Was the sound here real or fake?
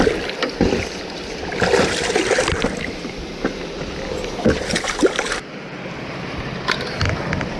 real